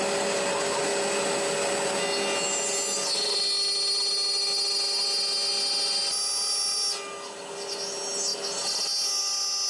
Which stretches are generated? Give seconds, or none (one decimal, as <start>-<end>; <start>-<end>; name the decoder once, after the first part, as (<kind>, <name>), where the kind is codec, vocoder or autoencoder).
none